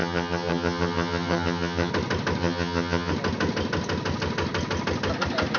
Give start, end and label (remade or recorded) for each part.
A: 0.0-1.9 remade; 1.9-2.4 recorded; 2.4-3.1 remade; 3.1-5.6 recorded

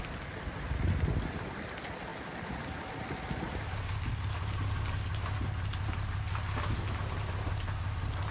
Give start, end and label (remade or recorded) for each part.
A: 0.0-8.3 recorded

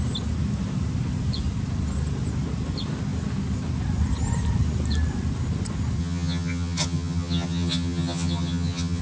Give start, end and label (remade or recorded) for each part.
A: 0.0-6.0 recorded; 6.0-9.0 remade

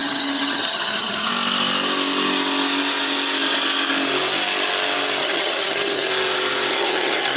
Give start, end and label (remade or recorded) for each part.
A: 0.0-1.3 remade; 1.3-5.2 recorded; 5.2-6.1 remade; 6.1-6.7 recorded; 6.7-7.4 remade

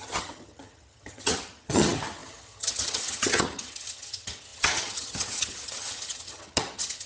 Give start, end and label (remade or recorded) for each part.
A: 0.0-7.1 remade

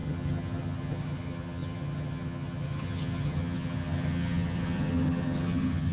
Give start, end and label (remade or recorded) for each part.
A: 0.0-5.9 remade

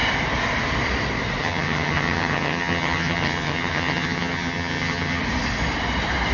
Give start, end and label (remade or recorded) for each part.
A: 0.0-1.4 recorded; 1.4-5.2 remade; 5.2-6.3 recorded